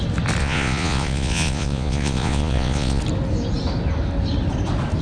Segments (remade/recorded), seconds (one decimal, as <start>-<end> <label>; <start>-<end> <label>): 0.0-0.4 recorded; 0.4-3.0 remade; 3.0-5.0 recorded